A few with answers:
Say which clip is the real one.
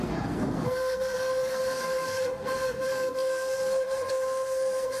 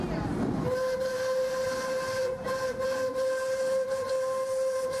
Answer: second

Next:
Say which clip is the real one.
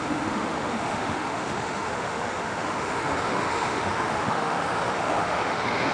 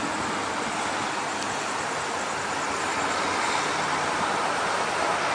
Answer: second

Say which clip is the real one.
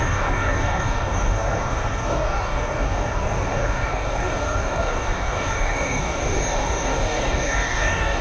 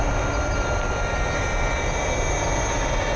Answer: second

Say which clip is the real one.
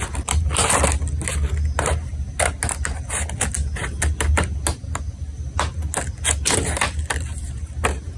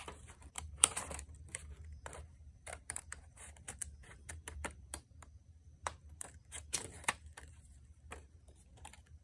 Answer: first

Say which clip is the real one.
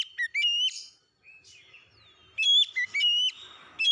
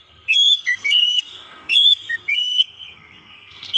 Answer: first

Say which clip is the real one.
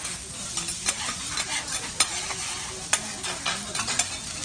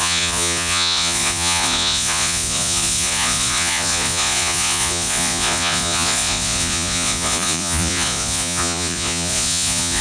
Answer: first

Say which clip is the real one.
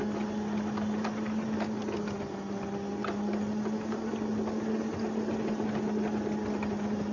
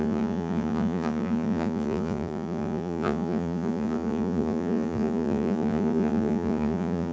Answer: first